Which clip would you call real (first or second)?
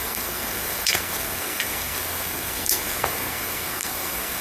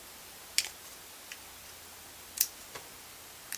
second